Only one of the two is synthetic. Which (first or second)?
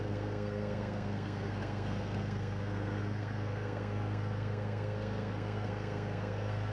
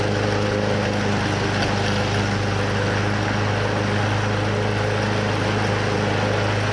first